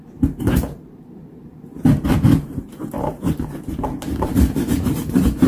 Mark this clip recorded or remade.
remade